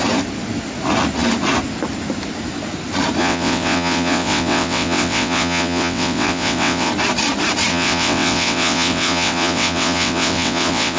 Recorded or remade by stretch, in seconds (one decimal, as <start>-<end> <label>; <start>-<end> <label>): 0.0-3.2 recorded; 3.2-6.9 remade; 6.9-7.7 recorded; 7.7-11.0 remade